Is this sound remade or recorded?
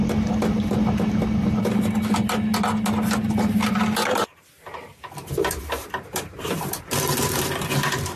recorded